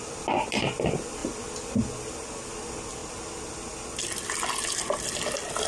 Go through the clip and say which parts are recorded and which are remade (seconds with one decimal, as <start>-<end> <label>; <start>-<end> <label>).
0.0-5.7 recorded